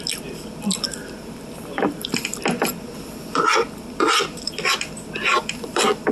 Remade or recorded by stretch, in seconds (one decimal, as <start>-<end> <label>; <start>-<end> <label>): 0.0-1.0 recorded; 1.0-2.2 remade; 2.2-6.1 recorded